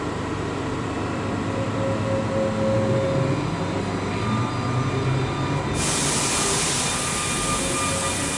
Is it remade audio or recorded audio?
recorded